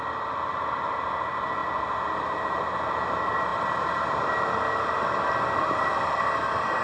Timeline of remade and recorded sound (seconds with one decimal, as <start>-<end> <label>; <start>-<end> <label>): 0.0-6.8 recorded